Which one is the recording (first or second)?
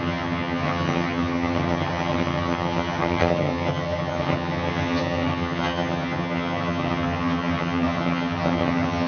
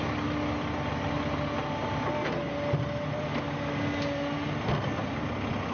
second